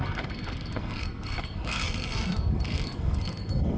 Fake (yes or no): yes